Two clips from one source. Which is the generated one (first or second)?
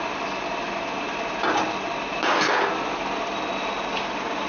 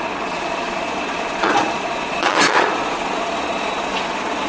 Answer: second